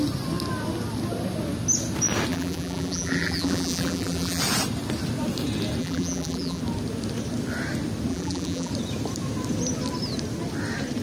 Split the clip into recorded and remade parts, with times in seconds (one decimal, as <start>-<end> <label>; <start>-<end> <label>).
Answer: 0.0-2.3 recorded; 2.3-4.4 remade; 4.4-5.8 recorded; 5.8-6.6 remade; 6.6-8.1 recorded; 8.1-8.7 remade; 8.7-11.0 recorded